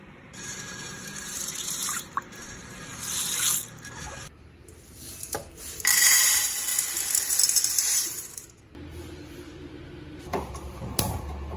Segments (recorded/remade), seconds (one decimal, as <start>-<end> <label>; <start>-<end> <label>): 0.0-2.9 remade; 2.9-4.0 recorded; 4.0-6.7 remade; 6.7-8.0 recorded; 8.0-11.6 remade